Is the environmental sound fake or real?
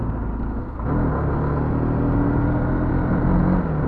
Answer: real